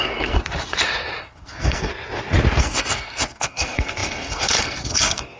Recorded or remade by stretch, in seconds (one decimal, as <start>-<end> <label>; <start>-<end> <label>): 0.0-0.4 remade; 0.4-1.2 recorded; 1.2-1.9 remade; 1.9-2.6 recorded; 2.6-5.4 remade